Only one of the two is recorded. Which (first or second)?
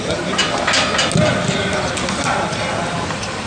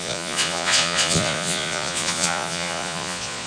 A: first